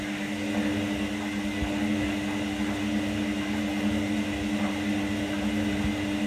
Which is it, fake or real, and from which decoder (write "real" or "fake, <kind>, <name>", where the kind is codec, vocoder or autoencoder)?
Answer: real